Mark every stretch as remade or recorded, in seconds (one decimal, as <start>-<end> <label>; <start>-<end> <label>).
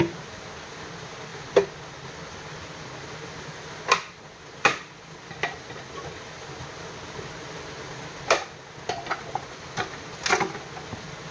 0.0-11.3 recorded